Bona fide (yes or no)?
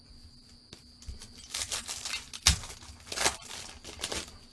yes